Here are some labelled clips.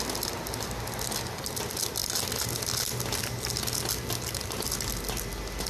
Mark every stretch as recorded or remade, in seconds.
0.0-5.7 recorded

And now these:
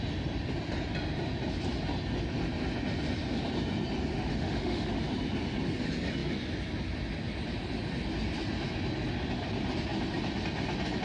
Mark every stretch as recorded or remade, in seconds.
0.0-4.1 recorded; 4.1-5.0 remade; 5.0-11.0 recorded

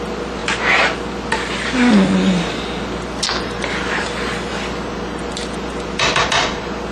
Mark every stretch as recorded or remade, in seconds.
0.0-6.9 recorded

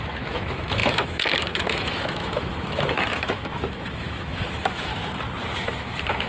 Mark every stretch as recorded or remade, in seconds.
0.0-4.9 remade; 4.9-5.6 recorded; 5.6-6.3 remade

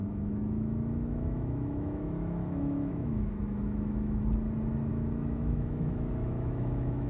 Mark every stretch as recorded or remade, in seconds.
0.0-4.2 remade; 4.2-4.9 recorded; 4.9-7.1 remade

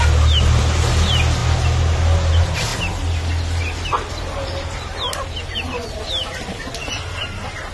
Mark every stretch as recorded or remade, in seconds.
0.0-7.7 recorded